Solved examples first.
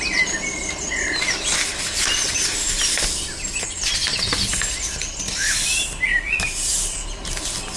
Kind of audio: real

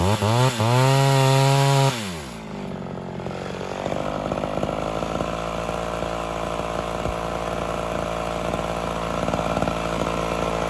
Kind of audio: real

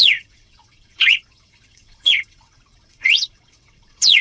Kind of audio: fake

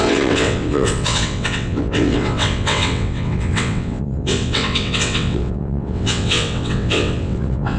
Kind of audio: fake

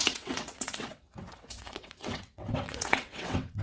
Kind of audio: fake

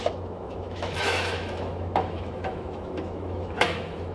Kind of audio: fake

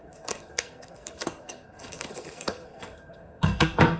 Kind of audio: fake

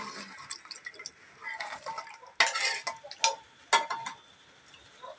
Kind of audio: real